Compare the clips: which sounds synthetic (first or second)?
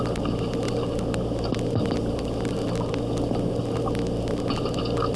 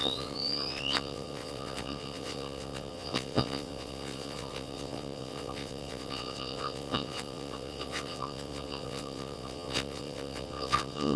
second